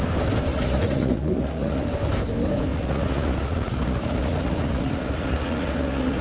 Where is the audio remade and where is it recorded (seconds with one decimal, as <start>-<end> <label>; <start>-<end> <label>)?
0.0-0.5 recorded; 0.5-1.9 remade; 1.9-2.7 recorded; 2.7-6.2 remade